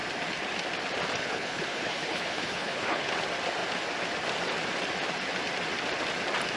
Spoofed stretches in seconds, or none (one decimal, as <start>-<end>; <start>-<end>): 1.2-3.1